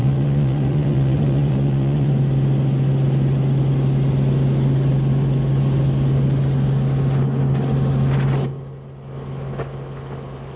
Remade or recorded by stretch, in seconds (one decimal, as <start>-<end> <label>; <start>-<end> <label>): 0.0-2.1 remade; 2.1-10.6 recorded